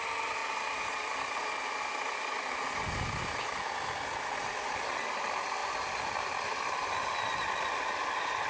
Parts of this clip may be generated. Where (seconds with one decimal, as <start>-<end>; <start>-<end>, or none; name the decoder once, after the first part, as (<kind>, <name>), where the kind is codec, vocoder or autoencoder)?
none